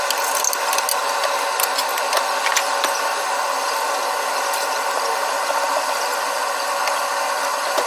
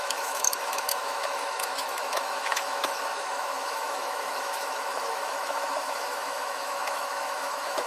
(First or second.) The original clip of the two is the first